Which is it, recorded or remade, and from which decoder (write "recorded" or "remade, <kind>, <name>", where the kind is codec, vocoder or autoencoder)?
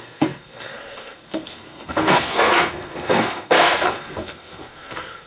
remade, codec, SNAC